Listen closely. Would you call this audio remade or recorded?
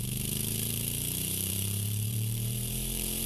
remade